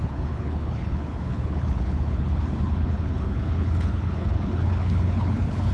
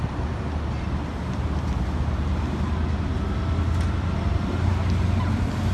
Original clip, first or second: second